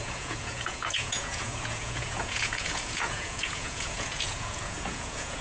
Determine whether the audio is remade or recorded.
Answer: remade